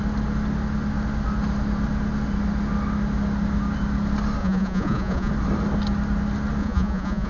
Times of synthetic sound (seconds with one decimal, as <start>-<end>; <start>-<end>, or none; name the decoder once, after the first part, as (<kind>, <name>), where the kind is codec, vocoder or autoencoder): 4.4-5.3 (vocoder, Vocos); 6.6-7.3